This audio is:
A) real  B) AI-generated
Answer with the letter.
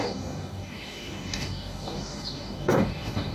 B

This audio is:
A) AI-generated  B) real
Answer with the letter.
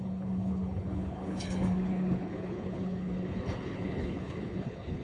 A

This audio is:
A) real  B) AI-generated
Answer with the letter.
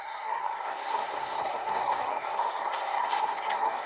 B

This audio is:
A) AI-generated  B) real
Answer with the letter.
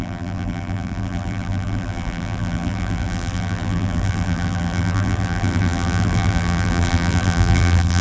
A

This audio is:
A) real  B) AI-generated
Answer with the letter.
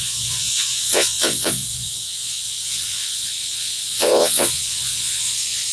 B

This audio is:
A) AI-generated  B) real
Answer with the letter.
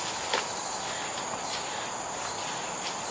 B